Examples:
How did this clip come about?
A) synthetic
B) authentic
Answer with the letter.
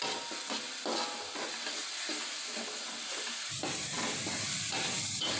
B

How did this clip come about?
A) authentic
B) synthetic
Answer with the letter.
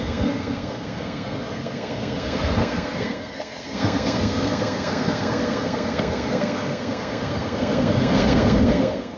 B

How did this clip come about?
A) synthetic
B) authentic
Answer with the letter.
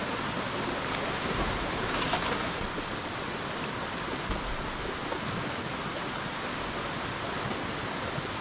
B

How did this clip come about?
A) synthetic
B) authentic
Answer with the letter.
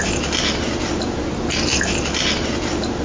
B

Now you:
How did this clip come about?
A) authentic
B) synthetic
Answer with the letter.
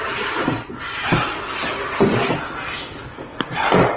A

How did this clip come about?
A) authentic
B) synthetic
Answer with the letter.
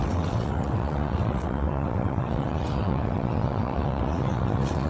B